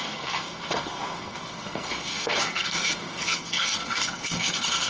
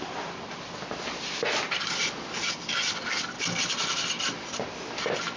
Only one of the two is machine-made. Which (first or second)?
first